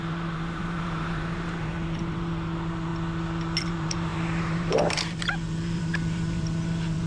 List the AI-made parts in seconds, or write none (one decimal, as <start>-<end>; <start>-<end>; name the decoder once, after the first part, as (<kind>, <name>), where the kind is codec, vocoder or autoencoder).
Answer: 0.0-2.9 (vocoder, BigVGAN v2); 3.6-7.1